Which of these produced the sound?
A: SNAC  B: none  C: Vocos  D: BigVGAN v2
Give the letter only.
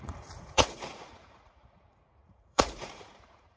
C